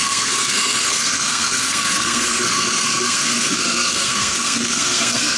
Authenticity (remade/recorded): remade